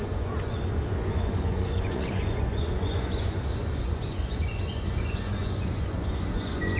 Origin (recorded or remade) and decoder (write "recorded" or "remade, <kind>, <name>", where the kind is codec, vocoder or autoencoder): remade, vocoder, Vocos